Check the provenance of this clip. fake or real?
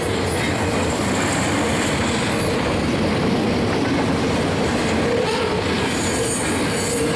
real